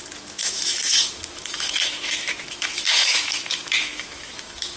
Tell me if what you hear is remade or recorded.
remade